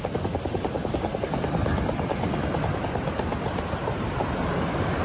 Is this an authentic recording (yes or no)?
yes